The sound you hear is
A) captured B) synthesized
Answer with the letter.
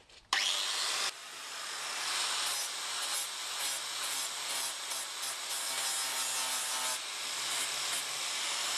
A